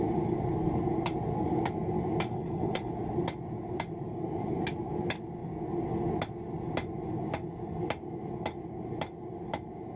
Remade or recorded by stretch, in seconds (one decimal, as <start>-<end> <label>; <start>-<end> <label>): 0.0-2.3 recorded; 2.3-2.9 remade; 2.9-10.0 recorded